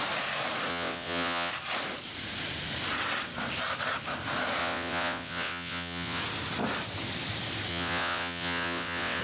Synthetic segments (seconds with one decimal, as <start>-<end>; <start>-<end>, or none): 0.7-1.5; 4.6-6.2; 7.7-9.2